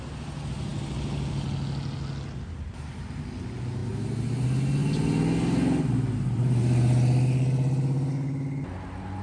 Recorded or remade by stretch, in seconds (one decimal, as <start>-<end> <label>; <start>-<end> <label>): 0.0-9.2 recorded